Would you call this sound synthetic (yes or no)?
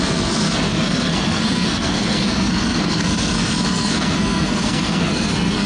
yes